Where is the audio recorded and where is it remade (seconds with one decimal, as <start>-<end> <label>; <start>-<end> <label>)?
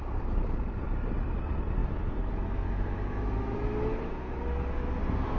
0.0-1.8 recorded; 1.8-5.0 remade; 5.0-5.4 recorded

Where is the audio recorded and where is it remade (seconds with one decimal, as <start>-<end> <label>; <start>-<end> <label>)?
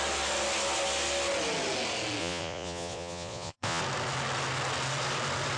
0.0-2.2 recorded; 2.2-3.8 remade; 3.8-5.6 recorded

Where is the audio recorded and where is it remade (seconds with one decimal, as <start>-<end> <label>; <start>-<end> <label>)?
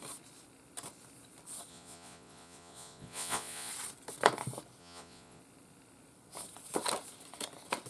0.0-1.7 recorded; 1.7-3.7 remade; 3.7-4.8 recorded; 4.8-5.4 remade; 5.4-7.9 recorded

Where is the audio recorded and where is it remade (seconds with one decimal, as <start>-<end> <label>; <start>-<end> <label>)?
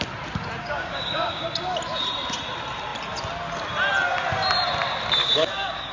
0.0-0.6 recorded; 0.6-1.4 remade; 1.4-5.2 recorded; 5.2-5.9 remade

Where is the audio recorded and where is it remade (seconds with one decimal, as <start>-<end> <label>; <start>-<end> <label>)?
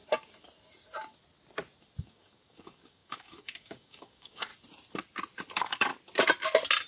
0.0-2.0 recorded; 2.0-4.5 remade; 4.5-5.5 recorded; 5.5-5.9 remade; 5.9-6.9 recorded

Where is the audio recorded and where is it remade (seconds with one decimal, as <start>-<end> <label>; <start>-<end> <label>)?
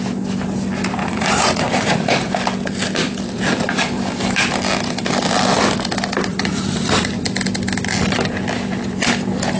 0.0-1.0 recorded; 1.0-2.3 remade; 2.3-6.3 recorded; 6.3-7.1 remade; 7.1-9.6 recorded